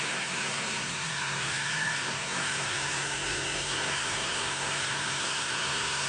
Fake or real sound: fake